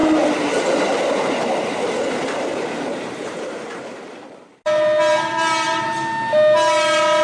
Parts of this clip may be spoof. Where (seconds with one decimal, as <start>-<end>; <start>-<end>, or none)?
0.0-0.7; 2.5-4.6